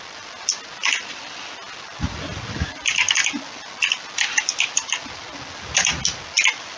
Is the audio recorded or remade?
recorded